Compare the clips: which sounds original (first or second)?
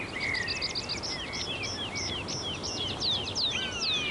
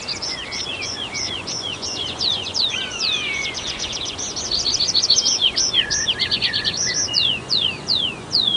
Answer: first